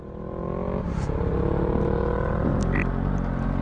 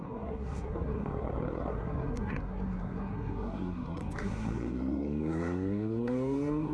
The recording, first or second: first